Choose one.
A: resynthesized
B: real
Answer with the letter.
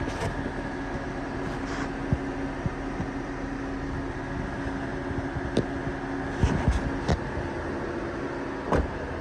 B